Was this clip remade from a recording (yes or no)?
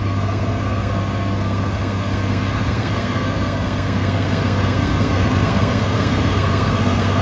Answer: yes